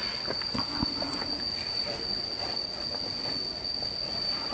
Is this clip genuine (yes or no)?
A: yes